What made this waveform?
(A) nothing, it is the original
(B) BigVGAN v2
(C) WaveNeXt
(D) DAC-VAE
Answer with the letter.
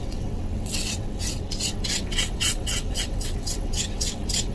C